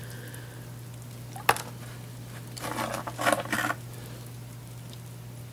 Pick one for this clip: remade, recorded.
recorded